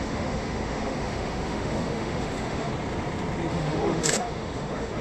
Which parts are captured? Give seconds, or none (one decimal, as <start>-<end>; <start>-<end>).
2.7-3.5